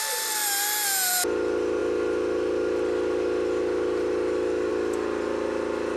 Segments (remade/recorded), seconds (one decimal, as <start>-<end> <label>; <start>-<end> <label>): 0.0-6.0 recorded